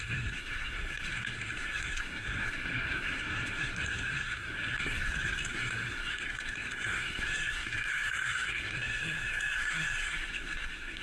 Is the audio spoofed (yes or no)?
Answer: yes